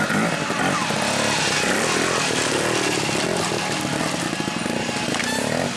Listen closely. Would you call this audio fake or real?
real